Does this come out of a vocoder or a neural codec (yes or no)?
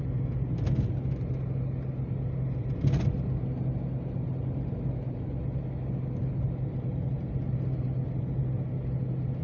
no